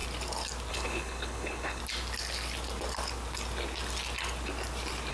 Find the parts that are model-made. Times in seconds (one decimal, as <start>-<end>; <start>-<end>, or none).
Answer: 0.7-1.8